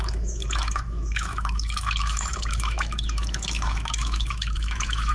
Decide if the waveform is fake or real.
fake